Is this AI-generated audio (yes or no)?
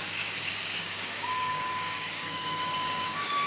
yes